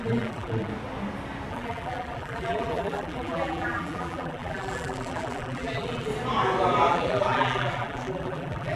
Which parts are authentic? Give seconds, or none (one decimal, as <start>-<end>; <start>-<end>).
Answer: 0.7-1.5; 6.1-6.9